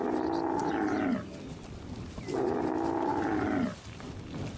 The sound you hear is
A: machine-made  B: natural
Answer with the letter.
B